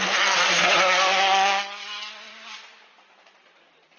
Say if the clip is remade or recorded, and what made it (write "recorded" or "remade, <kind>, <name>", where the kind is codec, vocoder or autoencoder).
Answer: recorded